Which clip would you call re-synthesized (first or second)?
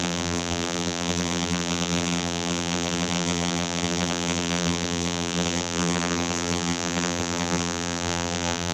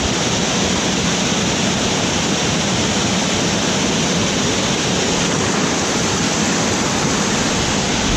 first